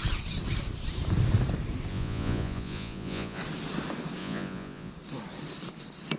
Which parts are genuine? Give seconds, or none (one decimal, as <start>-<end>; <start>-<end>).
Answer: 0.0-1.9; 3.4-4.2; 4.9-6.2